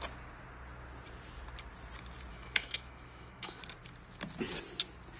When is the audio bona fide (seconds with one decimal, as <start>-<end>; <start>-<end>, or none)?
0.0-2.3; 3.6-5.2